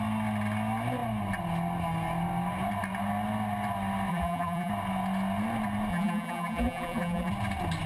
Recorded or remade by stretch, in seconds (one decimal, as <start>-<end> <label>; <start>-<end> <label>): 0.0-4.1 recorded; 4.1-4.7 remade; 4.7-5.9 recorded; 5.9-7.3 remade; 7.3-7.9 recorded